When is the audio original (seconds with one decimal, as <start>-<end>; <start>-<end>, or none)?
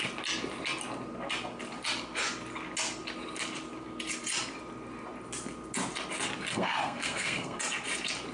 0.0-6.5; 7.6-8.3